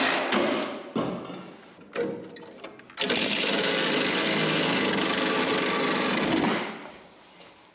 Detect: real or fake real